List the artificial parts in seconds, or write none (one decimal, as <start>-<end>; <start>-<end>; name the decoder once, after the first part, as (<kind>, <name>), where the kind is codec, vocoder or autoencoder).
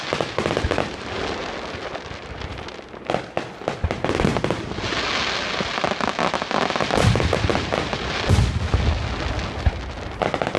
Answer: none